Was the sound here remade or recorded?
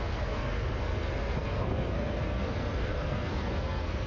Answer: remade